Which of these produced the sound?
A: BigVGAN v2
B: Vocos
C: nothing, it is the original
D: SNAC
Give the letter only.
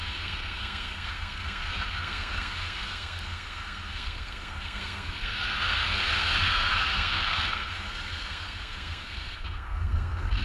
D